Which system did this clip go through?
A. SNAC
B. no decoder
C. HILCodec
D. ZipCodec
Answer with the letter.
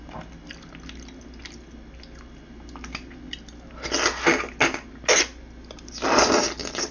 B